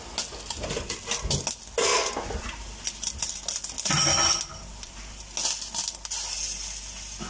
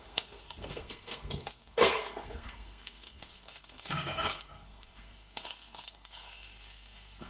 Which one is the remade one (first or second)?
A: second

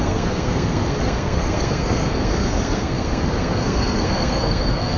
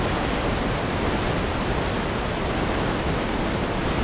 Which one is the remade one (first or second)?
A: first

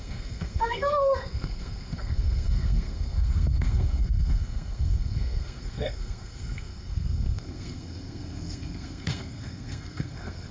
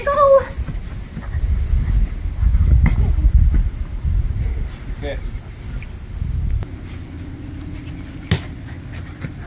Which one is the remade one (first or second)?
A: first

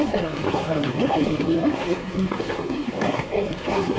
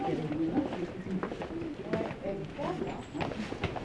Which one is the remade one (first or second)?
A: first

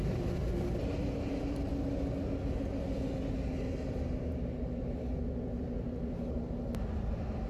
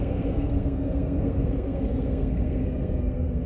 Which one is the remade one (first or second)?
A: second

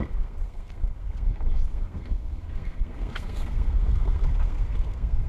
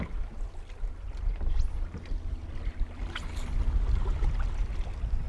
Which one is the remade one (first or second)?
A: first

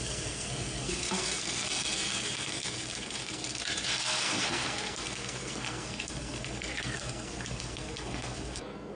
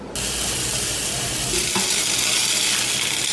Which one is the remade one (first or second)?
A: first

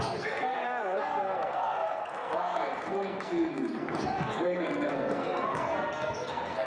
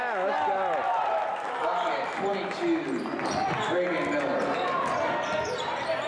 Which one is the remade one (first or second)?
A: first